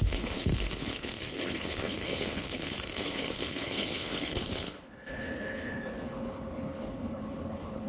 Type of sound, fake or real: fake